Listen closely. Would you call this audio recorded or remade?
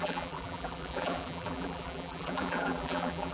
remade